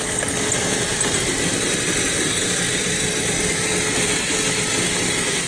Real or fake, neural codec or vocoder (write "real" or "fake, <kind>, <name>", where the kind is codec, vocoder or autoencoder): real